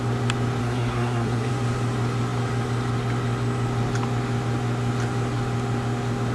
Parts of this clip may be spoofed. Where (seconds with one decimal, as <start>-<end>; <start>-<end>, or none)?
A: 0.6-1.5